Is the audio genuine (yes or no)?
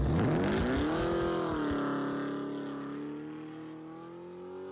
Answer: yes